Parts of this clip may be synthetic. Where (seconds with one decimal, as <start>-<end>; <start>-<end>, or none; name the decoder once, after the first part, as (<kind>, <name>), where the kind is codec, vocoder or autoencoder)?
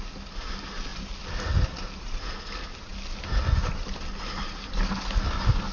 none